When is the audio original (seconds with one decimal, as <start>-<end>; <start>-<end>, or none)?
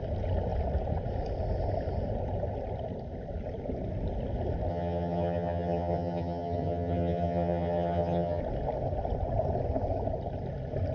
0.0-4.7; 8.4-10.9